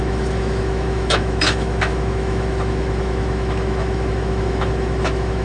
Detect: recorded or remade remade